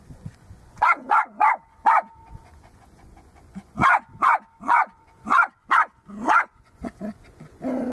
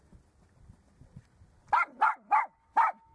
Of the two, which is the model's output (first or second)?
first